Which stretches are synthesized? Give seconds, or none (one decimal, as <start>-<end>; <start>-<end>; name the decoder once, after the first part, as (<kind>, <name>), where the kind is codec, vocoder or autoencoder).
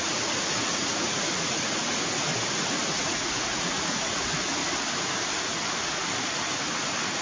0.0-2.3 (vocoder, Vocos); 2.9-4.6; 6.6-7.2